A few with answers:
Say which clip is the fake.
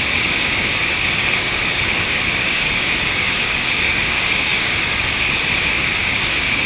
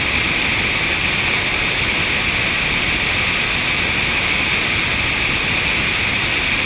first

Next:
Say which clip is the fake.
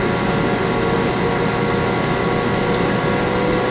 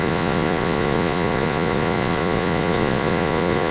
second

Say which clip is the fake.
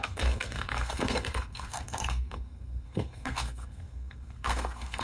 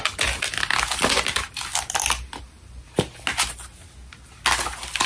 first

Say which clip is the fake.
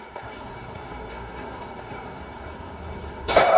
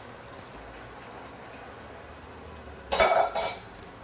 first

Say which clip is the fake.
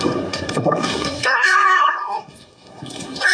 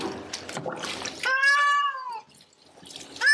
first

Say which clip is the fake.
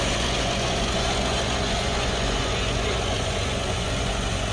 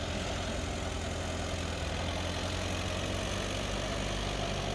first